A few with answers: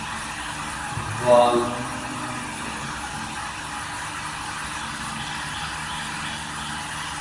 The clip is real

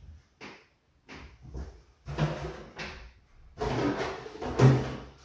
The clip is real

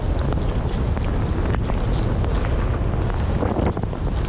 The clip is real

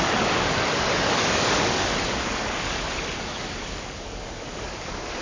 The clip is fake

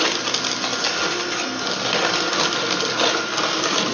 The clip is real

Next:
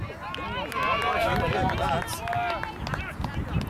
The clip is real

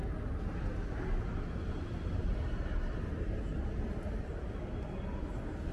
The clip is real